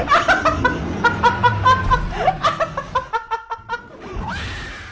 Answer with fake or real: real